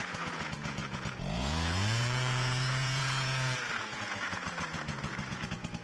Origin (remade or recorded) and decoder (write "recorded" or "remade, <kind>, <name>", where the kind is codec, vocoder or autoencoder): remade, vocoder, Vocos